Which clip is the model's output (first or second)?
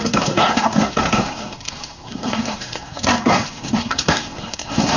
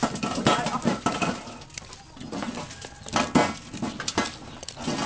first